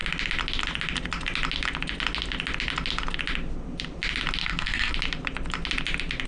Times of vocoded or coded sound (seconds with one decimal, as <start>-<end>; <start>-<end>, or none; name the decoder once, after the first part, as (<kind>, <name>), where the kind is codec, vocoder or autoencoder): 4.4-4.9 (codec, SNAC)